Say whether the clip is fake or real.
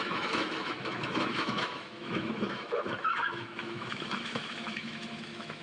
fake